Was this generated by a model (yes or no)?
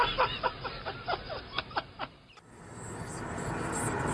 no